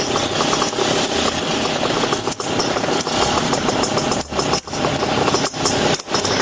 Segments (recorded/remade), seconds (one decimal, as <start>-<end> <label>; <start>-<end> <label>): 0.0-6.4 recorded